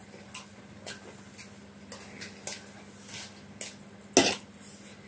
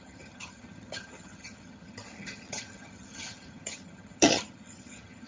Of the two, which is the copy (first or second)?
second